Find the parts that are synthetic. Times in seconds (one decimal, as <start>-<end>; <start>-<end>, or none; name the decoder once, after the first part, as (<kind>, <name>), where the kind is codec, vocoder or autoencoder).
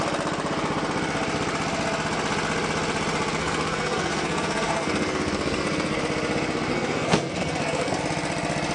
3.4-6.0 (codec, SNAC); 6.7-8.0